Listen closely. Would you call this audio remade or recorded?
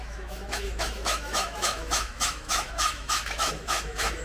remade